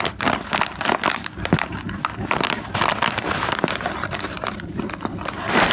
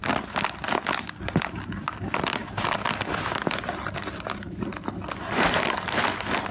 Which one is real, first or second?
second